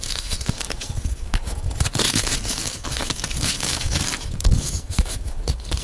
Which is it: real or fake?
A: fake